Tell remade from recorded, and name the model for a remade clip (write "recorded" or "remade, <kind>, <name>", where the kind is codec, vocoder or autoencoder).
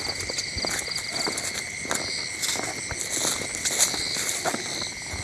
recorded